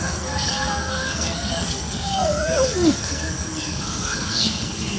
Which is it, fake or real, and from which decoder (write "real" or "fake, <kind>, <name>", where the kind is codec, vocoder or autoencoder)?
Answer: fake, codec, SNAC